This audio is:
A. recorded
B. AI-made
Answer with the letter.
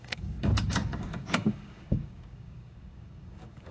B